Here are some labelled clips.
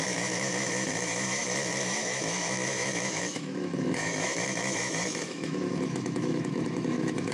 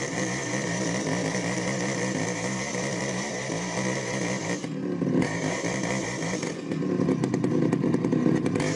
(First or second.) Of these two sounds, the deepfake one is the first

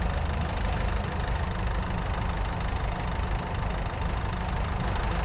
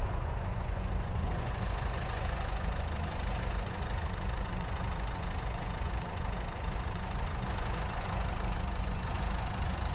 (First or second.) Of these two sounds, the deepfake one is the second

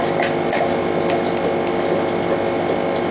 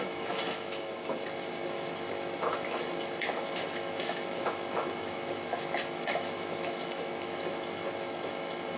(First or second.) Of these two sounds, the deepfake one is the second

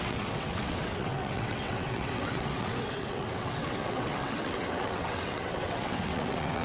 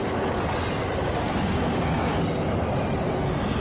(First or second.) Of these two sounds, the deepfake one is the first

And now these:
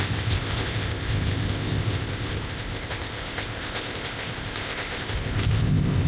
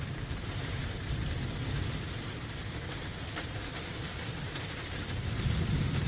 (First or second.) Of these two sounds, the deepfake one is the first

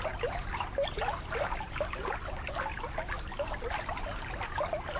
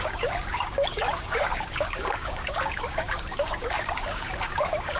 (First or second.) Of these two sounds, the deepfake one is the second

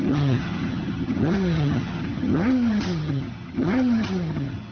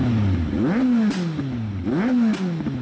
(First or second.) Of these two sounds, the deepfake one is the first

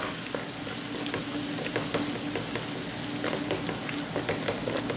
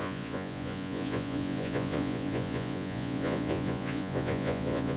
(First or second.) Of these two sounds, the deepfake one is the second